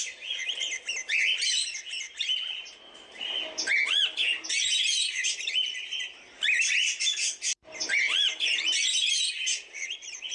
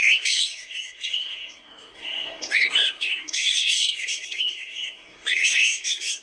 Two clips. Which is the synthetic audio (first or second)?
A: second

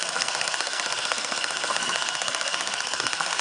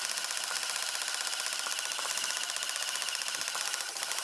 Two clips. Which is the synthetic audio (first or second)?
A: first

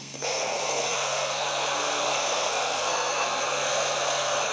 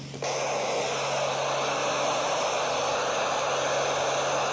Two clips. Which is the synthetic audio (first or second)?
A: first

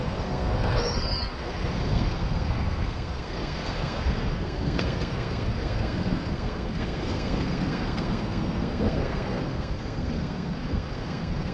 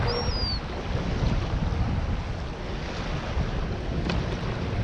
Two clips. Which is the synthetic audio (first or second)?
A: first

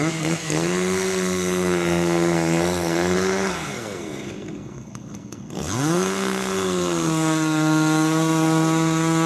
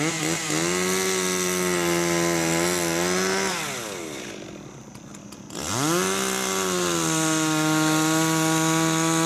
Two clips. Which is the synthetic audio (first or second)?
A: first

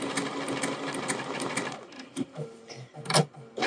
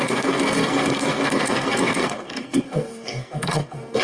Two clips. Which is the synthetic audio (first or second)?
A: second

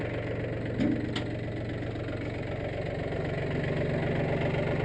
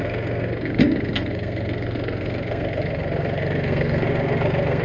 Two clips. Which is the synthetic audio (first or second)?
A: second